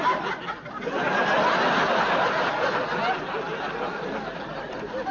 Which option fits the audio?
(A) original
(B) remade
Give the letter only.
A